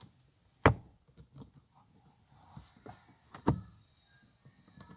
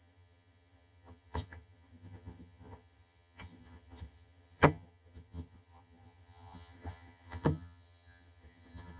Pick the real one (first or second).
first